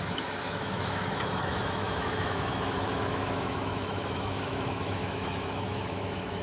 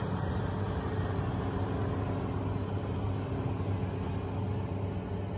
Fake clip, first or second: first